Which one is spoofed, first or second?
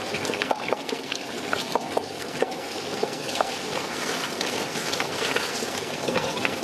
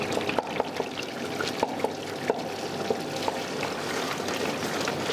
first